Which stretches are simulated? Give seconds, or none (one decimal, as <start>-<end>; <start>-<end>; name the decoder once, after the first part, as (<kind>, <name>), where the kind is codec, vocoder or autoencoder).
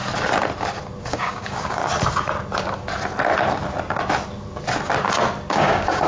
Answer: 1.0-1.8 (codec, DAC); 5.5-6.1